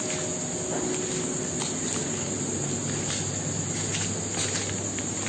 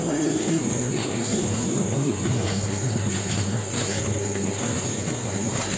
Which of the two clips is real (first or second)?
first